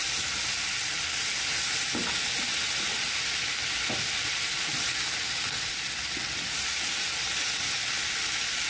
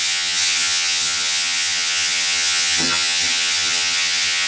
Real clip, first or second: first